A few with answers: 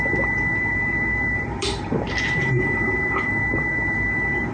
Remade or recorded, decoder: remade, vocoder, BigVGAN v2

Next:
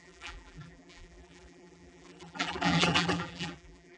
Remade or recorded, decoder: remade, vocoder, BigVGAN v2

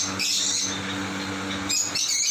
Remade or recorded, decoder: recorded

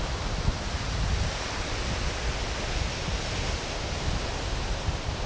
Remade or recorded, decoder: recorded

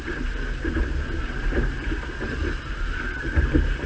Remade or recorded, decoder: recorded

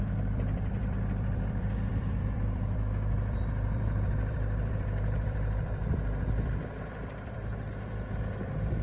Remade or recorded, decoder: remade, vocoder, BigVGAN v2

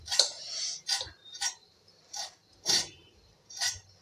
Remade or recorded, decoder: remade, vocoder, BigVGAN v2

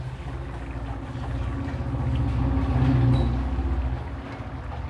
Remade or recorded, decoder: recorded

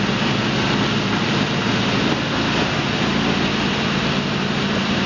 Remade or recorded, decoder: recorded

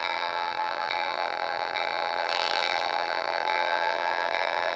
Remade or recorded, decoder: remade, vocoder, BigVGAN v2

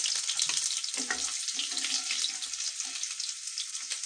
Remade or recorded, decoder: recorded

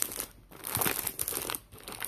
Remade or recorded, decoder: recorded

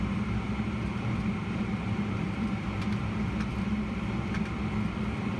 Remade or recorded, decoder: remade, vocoder, BigVGAN v2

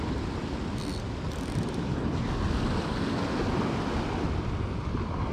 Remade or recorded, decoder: recorded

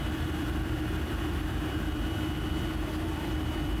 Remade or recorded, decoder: remade, vocoder, BigVGAN v2